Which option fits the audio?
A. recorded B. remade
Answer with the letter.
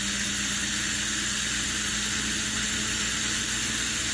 A